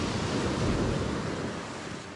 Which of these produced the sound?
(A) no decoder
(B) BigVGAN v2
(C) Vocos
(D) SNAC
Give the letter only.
A